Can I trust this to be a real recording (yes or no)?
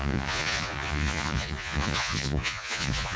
no